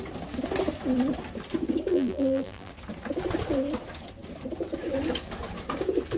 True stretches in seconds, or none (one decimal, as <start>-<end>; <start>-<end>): 0.0-1.9; 2.7-6.2